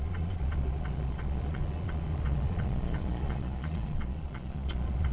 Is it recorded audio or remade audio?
remade